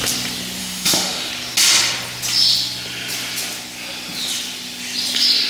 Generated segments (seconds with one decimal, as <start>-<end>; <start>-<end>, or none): 0.6-1.3